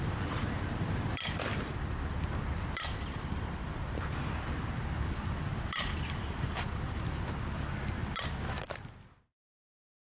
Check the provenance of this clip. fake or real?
fake